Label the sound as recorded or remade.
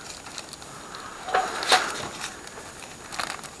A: recorded